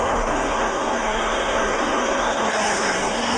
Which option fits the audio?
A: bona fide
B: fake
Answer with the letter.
B